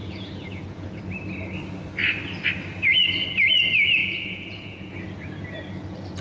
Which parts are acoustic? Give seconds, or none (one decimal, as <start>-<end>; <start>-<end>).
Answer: 1.0-4.0; 4.9-6.2